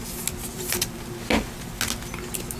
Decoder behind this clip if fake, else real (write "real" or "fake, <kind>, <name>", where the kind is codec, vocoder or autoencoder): real